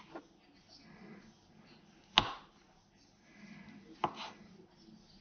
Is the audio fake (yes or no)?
no